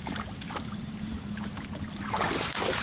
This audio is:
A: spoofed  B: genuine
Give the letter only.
A